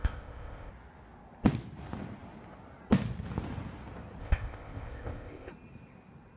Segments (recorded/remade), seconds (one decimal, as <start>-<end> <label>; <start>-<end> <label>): 0.0-0.7 remade; 0.7-4.2 recorded; 4.2-5.5 remade; 5.5-6.4 recorded